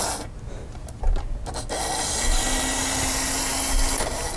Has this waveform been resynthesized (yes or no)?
no